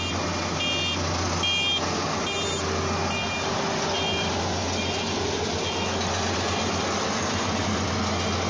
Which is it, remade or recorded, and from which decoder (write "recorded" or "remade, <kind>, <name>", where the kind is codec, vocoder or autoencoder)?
recorded